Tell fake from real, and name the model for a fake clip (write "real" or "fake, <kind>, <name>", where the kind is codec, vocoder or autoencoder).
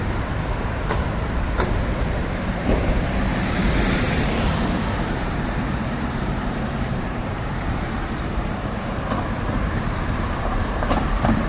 fake, vocoder, BigVGAN v2